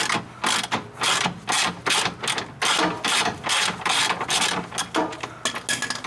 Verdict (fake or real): real